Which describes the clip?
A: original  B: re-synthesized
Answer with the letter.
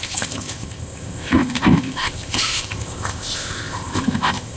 B